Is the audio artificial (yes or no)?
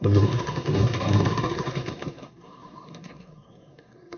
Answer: yes